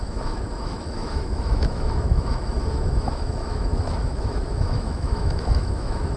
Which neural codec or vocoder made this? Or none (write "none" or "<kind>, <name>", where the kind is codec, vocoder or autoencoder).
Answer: autoencoder, DAC-VAE